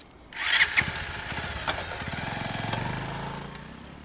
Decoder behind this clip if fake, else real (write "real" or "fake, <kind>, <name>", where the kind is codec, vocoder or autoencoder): real